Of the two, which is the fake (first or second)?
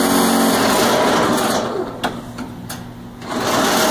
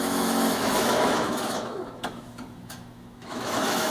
second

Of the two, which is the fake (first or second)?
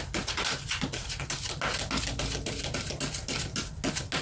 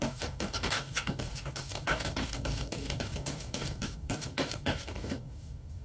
second